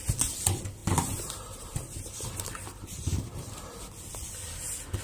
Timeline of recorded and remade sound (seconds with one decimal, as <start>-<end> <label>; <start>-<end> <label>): 0.0-0.8 recorded; 0.8-3.8 remade; 3.8-5.0 recorded